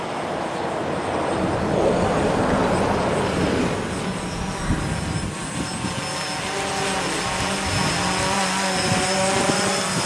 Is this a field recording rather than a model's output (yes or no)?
yes